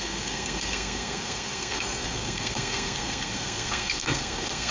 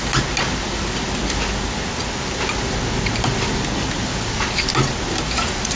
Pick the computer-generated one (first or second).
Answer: first